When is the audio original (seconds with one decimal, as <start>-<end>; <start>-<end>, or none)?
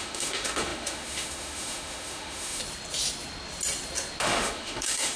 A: 2.6-4.2